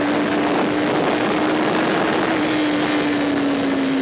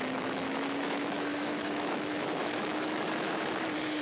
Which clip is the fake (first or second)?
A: second